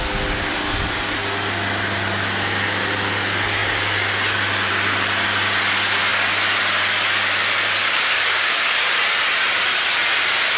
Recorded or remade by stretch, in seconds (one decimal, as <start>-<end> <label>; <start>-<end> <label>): 0.0-7.8 recorded; 7.8-8.8 remade; 8.8-10.6 recorded